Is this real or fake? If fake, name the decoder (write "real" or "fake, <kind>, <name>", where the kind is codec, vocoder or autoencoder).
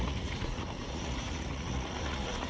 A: fake, vocoder, Vocos